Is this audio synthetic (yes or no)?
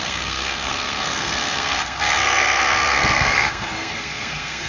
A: yes